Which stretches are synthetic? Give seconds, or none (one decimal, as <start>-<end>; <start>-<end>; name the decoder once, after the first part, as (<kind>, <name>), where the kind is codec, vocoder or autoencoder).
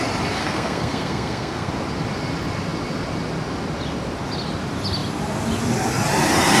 0.4-1.7 (codec, SNAC)